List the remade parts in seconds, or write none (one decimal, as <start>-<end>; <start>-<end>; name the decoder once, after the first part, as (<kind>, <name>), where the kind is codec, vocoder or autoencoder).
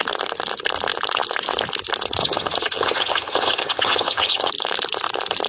2.2-4.5 (vocoder, HiFi-GAN)